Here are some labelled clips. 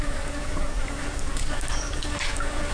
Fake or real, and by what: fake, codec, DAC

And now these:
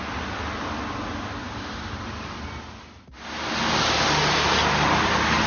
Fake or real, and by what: real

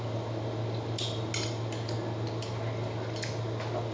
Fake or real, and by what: real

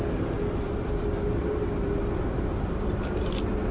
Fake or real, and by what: real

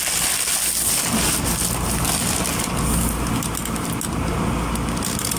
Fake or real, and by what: real